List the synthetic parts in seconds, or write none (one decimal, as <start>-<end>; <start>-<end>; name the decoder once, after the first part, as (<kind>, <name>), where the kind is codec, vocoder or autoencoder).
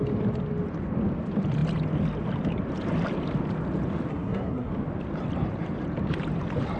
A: 4.1-4.7 (codec, SNAC)